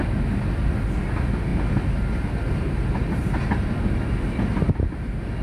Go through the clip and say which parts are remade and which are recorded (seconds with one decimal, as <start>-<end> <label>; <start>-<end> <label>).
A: 0.0-5.4 recorded